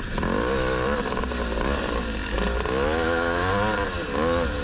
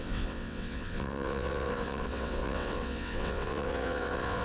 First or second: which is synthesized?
second